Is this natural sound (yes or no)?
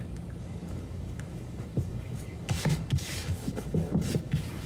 no